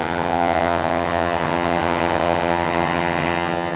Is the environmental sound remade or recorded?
remade